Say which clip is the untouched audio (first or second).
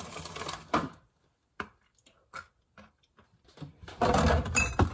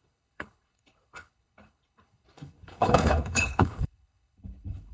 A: first